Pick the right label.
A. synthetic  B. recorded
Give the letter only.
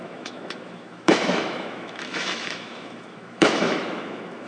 A